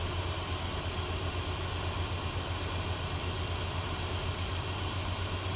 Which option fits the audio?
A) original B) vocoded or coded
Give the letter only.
A